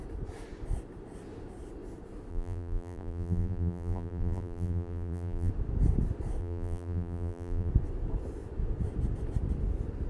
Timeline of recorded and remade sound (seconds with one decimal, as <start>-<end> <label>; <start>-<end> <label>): 0.0-2.3 recorded; 2.3-5.5 remade; 5.5-6.4 recorded; 6.4-7.7 remade; 7.7-10.1 recorded